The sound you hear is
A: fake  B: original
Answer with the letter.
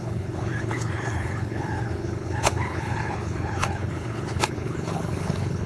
A